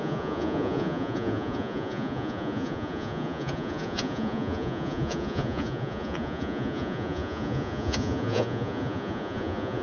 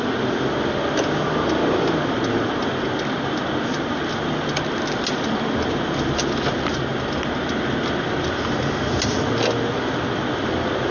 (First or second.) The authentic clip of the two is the second